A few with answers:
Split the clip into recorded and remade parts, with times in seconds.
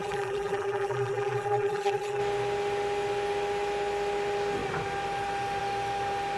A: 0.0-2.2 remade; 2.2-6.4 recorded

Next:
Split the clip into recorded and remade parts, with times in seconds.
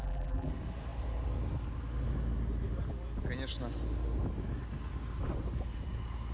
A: 0.0-0.5 remade; 0.5-6.3 recorded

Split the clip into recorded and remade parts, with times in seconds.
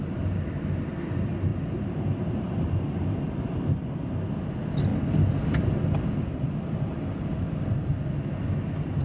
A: 0.0-1.5 recorded; 1.5-4.5 remade; 4.5-9.0 recorded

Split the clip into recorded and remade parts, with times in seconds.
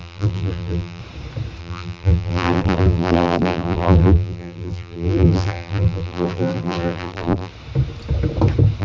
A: 0.0-1.0 remade; 1.0-1.6 recorded; 1.6-7.5 remade; 7.5-8.8 recorded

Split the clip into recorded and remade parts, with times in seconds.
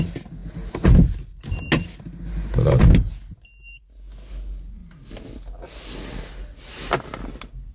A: 0.0-7.7 recorded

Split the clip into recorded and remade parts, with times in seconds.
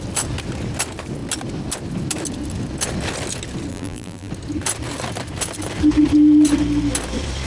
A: 0.0-3.7 recorded; 3.7-4.3 remade; 4.3-7.5 recorded